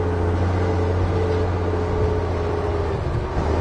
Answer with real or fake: real